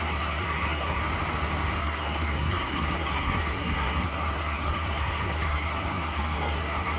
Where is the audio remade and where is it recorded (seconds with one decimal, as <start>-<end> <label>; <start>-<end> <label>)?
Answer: 0.0-1.0 remade; 1.0-1.8 recorded; 1.8-7.0 remade